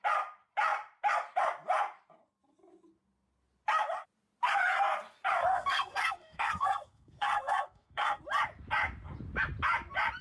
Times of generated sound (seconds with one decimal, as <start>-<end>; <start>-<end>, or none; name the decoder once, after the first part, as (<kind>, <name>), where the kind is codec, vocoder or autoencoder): 5.5-8.2 (codec, SNAC)